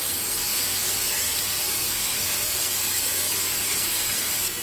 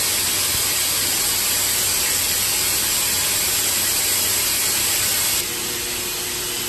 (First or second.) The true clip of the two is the second